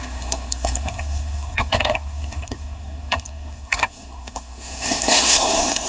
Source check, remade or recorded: remade